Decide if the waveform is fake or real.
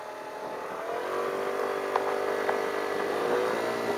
real